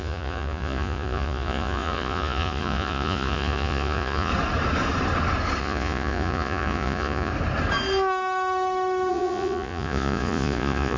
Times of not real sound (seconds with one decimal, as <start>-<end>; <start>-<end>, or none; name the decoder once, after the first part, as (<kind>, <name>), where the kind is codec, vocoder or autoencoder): 0.0-4.3 (vocoder, Vocos); 5.6-7.3; 9.1-11.0